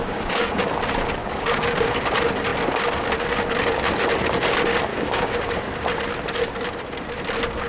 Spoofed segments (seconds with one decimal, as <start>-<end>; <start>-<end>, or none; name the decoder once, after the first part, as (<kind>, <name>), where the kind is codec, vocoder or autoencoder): 0.0-0.7 (codec, DAC); 1.2-1.9; 4.9-5.5